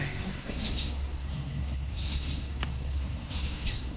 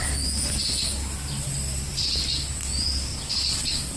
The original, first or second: second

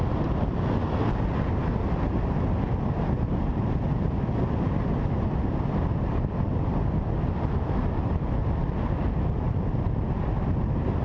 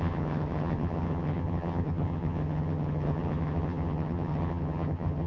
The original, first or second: first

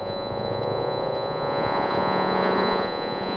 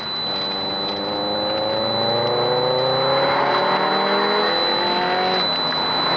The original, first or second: second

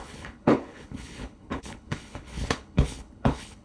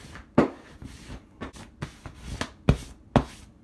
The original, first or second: second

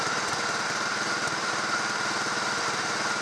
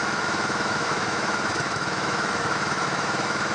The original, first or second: first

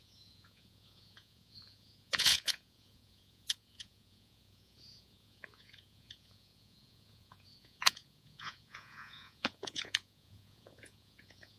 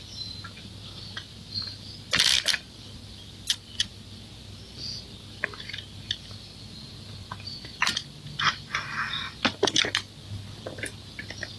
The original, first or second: second